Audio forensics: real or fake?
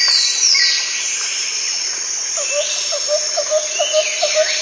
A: real